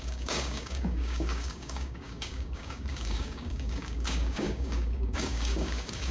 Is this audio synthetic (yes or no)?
yes